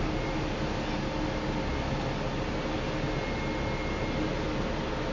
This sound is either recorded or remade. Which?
recorded